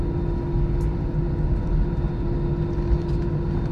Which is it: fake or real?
real